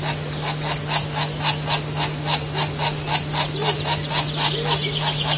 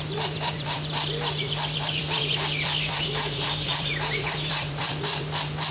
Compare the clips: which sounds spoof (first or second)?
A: second